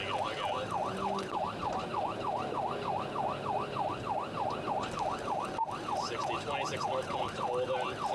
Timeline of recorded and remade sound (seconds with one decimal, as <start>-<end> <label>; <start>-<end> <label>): 0.0-8.1 recorded